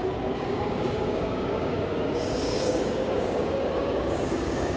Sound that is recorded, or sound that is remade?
remade